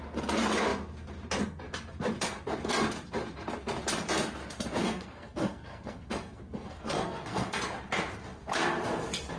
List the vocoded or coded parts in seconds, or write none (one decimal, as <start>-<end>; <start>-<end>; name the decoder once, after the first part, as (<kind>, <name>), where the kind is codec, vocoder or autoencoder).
4.8-7.6 (codec, SNAC)